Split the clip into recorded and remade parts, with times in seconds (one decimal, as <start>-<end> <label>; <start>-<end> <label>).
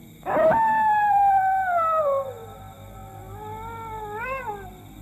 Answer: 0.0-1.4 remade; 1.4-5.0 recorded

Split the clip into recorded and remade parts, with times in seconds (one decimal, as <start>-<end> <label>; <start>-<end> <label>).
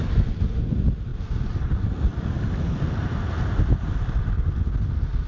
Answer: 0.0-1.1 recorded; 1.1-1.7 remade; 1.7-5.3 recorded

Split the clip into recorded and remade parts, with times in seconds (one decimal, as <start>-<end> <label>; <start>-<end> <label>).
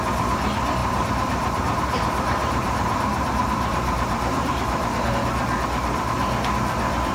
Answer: 0.0-0.8 recorded; 0.8-5.1 remade; 5.1-7.1 recorded